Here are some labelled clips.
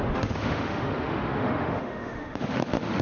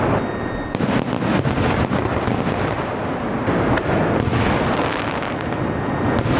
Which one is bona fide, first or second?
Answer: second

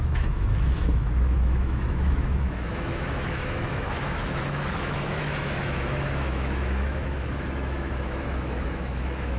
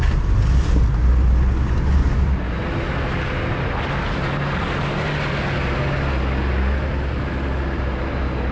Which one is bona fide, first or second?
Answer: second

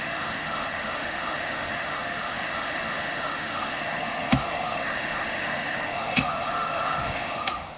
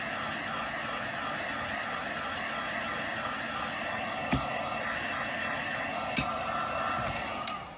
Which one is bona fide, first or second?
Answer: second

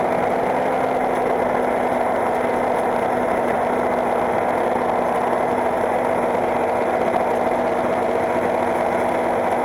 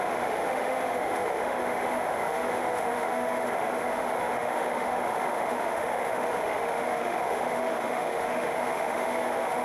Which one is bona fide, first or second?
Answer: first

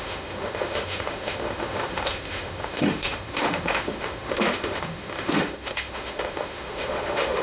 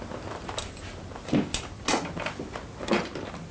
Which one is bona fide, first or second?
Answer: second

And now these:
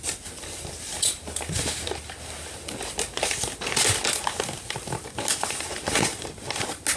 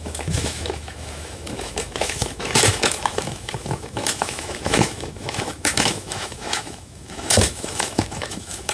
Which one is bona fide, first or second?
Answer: first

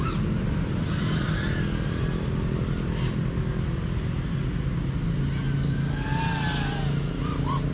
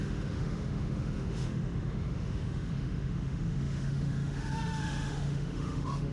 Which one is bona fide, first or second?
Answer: first